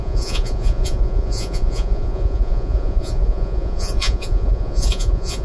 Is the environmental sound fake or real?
fake